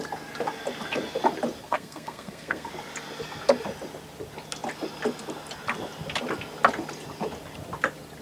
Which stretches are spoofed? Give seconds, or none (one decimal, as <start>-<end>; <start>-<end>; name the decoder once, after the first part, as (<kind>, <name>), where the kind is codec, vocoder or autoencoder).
1.6-2.7 (codec, SNAC)